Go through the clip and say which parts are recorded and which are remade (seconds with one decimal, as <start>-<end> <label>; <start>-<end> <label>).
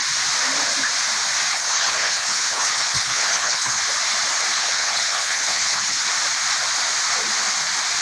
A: 0.0-1.5 recorded; 1.5-3.8 remade; 3.8-4.5 recorded; 4.5-6.0 remade; 6.0-8.0 recorded